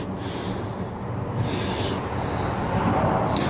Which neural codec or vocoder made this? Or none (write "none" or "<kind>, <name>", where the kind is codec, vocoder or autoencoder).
none